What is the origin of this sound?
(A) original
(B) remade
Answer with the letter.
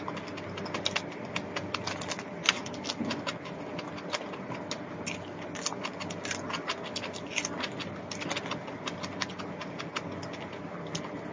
A